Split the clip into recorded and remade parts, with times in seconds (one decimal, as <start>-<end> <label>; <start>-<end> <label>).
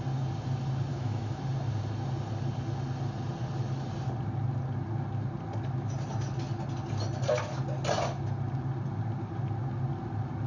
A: 0.0-0.9 recorded; 0.9-1.4 remade; 1.4-10.5 recorded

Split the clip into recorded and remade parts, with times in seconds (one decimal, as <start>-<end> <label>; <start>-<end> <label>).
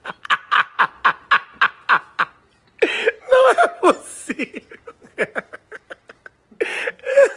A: 0.0-4.1 recorded; 4.1-5.8 remade; 5.8-6.7 recorded; 6.7-7.4 remade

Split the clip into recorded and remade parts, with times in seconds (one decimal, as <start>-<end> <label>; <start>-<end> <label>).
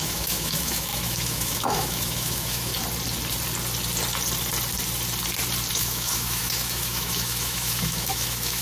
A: 0.0-2.7 remade; 2.7-5.7 recorded; 5.7-8.6 remade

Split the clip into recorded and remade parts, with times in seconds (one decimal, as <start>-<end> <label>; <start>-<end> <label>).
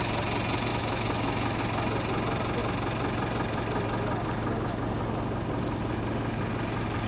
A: 0.0-0.7 recorded; 0.7-1.6 remade; 1.6-7.1 recorded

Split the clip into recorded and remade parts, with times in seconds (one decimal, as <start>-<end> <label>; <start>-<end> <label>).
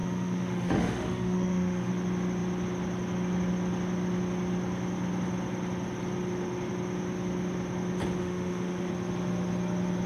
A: 0.0-1.9 remade; 1.9-8.2 recorded; 8.2-8.9 remade; 8.9-10.1 recorded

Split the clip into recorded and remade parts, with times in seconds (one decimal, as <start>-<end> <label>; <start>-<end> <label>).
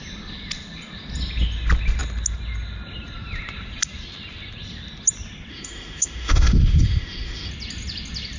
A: 0.0-5.5 recorded; 5.5-7.5 remade; 7.5-8.4 recorded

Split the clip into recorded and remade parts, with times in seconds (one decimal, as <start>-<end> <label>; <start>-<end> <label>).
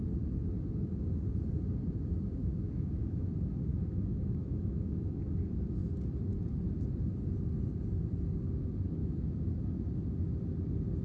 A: 0.0-2.4 recorded; 2.4-3.3 remade; 3.3-3.7 recorded; 3.7-5.2 remade; 5.2-9.0 recorded; 9.0-9.5 remade; 9.5-11.0 recorded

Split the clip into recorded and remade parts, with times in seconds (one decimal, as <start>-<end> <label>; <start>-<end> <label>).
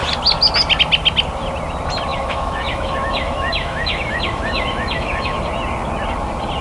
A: 0.0-2.1 recorded; 2.1-5.4 remade; 5.4-6.6 recorded